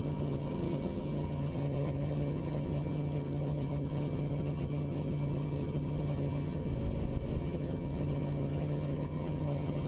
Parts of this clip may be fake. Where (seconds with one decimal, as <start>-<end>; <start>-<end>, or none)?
0.0-6.7; 7.4-9.9